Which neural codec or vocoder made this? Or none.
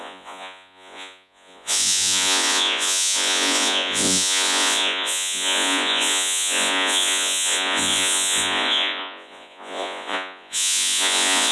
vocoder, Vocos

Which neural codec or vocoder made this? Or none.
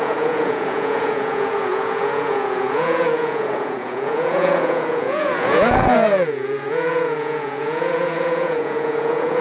vocoder, Vocos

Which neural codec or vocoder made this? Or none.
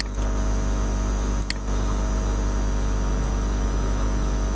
none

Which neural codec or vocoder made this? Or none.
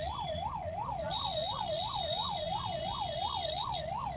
vocoder, Vocos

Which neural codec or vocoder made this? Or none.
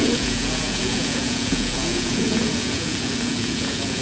vocoder, Vocos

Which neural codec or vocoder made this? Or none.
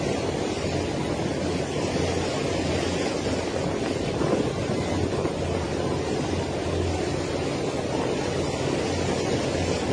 none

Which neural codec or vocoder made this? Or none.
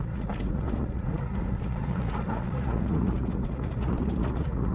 vocoder, Vocos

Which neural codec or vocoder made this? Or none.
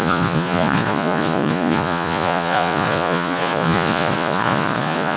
vocoder, Vocos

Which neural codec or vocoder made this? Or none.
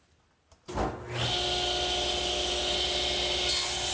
none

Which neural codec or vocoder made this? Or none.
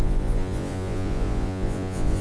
vocoder, Vocos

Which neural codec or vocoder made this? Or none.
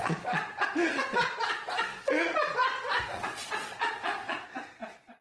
vocoder, Vocos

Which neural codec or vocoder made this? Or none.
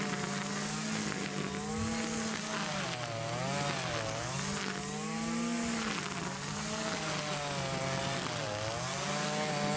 none